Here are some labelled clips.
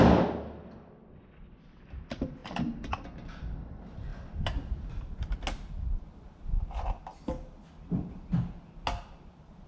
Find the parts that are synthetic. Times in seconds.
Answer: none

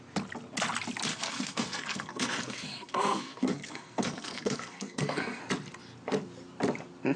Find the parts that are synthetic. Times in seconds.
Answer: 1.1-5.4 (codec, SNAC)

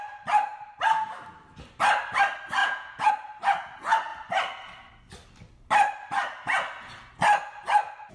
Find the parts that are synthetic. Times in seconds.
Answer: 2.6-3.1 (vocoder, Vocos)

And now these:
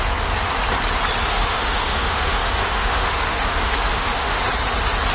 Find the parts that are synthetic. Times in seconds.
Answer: 1.3-4.4 (autoencoder, DAC-VAE)